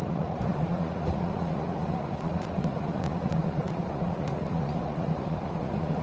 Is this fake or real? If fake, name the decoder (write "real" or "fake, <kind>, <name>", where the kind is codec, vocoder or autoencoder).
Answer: fake, vocoder, Vocos